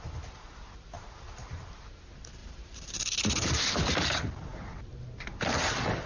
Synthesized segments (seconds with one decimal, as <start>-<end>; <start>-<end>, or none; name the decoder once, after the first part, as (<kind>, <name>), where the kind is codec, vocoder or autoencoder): 2.4-3.6 (vocoder, BigVGAN v2)